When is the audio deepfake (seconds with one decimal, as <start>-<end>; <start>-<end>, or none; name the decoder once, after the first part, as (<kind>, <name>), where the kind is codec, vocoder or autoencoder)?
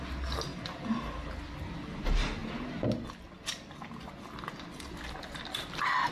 none